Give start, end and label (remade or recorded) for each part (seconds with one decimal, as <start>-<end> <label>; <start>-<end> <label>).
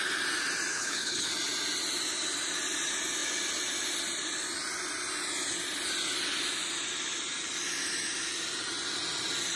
0.0-0.7 recorded; 0.7-1.3 remade; 1.3-9.6 recorded